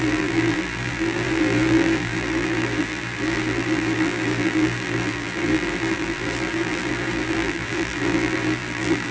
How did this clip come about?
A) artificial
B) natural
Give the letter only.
A